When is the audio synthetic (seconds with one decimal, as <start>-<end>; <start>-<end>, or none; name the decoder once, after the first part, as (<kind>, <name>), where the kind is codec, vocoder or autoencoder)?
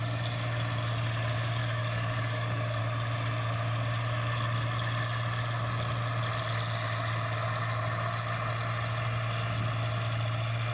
1.6-2.8 (codec, DAC)